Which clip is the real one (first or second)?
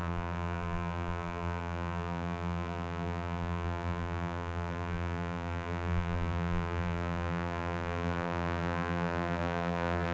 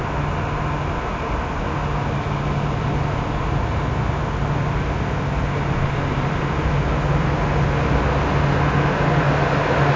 second